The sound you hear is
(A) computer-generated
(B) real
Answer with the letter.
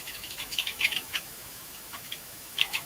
A